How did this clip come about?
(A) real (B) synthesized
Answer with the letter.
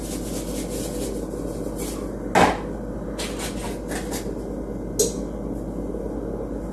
A